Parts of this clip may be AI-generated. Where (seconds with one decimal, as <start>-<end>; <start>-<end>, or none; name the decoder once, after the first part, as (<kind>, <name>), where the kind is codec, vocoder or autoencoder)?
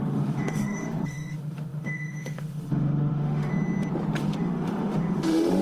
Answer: 0.0-3.5 (autoencoder, DAC-VAE); 4.2-5.6